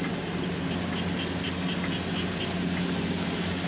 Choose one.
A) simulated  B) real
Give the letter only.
B